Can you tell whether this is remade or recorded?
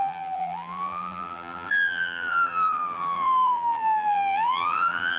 remade